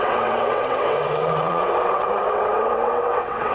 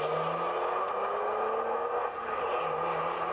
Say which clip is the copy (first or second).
first